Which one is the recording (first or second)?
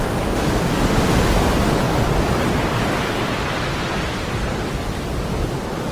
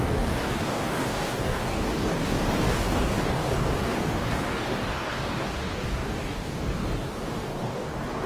first